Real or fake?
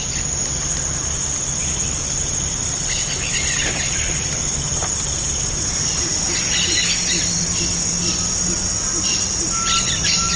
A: real